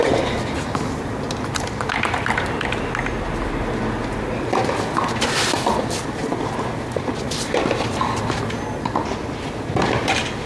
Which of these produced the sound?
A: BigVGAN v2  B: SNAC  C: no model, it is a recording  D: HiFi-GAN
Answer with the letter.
C